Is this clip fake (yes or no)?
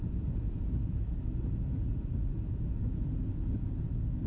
yes